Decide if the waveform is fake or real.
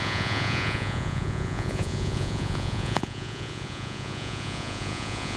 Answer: fake